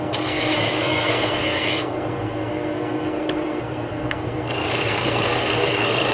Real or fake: fake